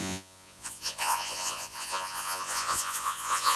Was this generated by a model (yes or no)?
yes